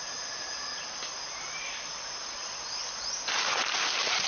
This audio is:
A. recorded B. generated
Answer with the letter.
A